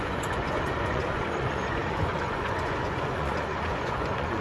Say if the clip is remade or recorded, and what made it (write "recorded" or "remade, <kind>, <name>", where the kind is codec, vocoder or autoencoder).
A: remade, vocoder, Vocos